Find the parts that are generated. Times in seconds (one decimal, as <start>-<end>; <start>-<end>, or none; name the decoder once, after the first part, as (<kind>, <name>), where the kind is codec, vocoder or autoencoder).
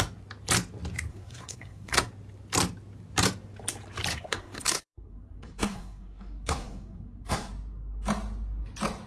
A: 1.1-2.0 (codec, SNAC); 4.1-7.5